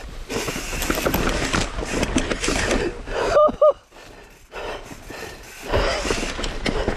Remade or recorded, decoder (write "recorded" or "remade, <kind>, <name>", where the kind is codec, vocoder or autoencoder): recorded